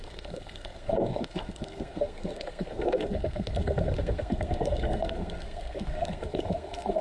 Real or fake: fake